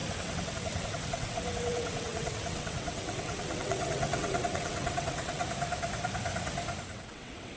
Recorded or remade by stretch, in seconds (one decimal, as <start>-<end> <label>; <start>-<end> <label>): 0.0-5.4 remade; 5.4-6.9 recorded; 6.9-7.6 remade